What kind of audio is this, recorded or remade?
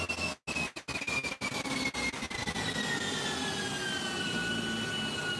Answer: recorded